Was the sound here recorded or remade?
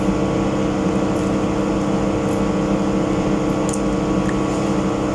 recorded